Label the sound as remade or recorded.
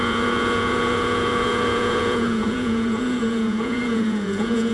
remade